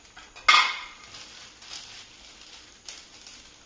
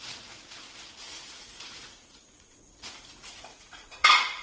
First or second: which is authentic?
first